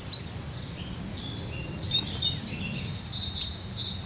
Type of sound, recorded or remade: recorded